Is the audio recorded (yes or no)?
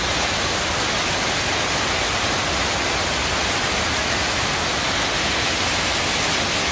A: yes